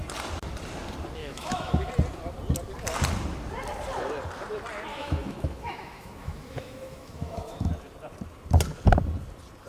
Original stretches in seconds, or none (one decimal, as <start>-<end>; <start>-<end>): 0.0-1.2; 1.9-4.9; 7.7-9.7